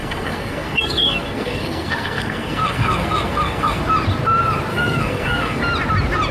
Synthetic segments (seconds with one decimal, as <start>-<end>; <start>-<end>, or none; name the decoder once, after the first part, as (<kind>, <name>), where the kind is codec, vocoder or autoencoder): 0.0-3.8 (codec, SNAC); 4.7-5.6